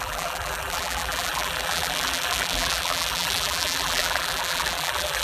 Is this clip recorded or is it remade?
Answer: remade